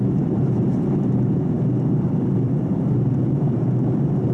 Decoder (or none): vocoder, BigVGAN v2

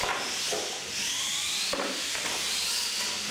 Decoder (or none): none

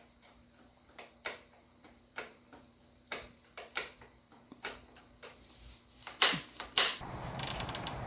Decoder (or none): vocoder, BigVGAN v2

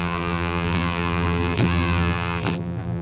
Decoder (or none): vocoder, BigVGAN v2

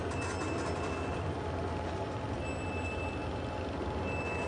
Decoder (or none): none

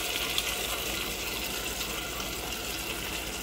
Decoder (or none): none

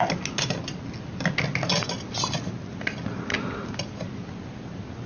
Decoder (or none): none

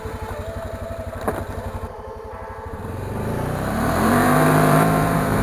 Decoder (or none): vocoder, BigVGAN v2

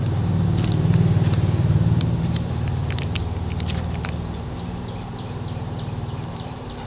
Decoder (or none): vocoder, BigVGAN v2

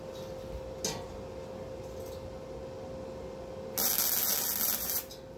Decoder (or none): none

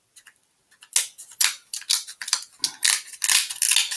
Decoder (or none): none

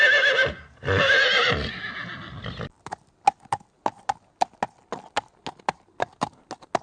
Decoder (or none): none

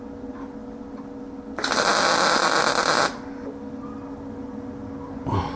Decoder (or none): none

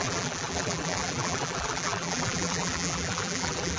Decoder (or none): vocoder, BigVGAN v2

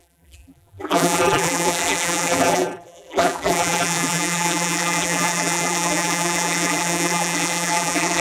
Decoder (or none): vocoder, BigVGAN v2